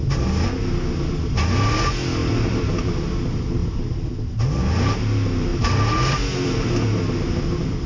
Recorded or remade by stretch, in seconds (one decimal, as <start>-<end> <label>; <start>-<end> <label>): 0.0-2.2 recorded; 2.2-2.9 remade; 2.9-3.6 recorded; 3.6-4.1 remade; 4.1-5.5 recorded; 5.5-6.5 remade; 6.5-7.9 recorded